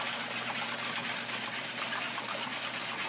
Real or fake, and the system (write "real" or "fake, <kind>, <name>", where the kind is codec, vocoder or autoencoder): real